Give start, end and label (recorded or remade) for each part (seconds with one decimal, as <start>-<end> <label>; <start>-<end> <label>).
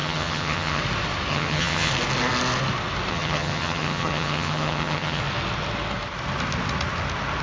0.0-0.8 remade; 0.8-1.3 recorded; 1.3-1.9 remade; 1.9-3.1 recorded; 3.1-5.2 remade; 5.2-7.4 recorded